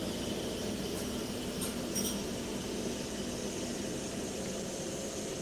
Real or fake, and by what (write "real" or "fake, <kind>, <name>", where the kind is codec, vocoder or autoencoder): fake, vocoder, BigVGAN v2